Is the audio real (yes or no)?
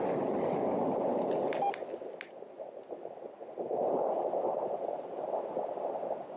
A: yes